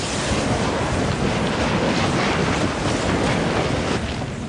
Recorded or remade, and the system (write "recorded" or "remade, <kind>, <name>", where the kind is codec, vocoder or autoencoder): recorded